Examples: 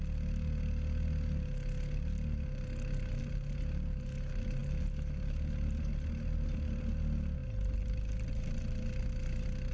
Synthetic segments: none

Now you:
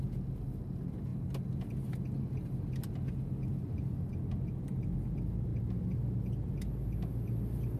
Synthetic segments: none

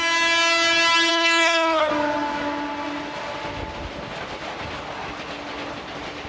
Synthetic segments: 1.1-1.9 (codec, SNAC)